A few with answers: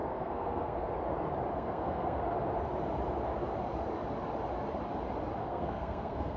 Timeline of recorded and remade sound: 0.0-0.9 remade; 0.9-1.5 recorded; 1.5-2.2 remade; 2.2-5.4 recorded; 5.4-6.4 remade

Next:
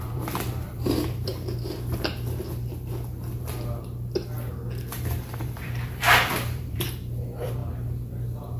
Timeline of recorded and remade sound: 0.0-1.3 remade; 1.3-5.1 recorded; 5.1-7.6 remade; 7.6-8.6 recorded

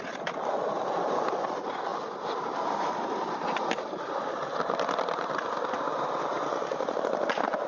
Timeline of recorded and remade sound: 0.0-7.7 recorded

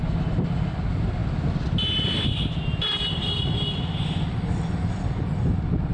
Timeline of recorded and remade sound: 0.0-5.9 recorded

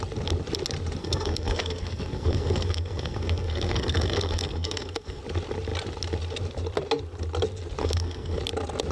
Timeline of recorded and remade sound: 0.0-1.0 recorded; 1.0-5.2 remade; 5.2-7.8 recorded; 7.8-8.4 remade; 8.4-8.9 recorded